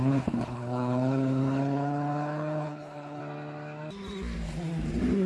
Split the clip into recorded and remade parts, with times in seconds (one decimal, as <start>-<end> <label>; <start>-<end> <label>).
0.0-3.2 remade; 3.2-5.3 recorded